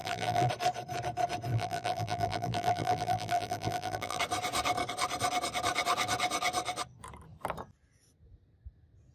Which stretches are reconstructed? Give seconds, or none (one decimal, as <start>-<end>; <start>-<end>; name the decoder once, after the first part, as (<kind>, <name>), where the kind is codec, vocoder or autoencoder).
0.0-0.5 (vocoder, BigVGAN v2); 1.5-4.2